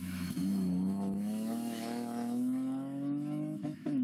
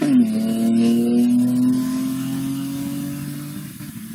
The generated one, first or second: first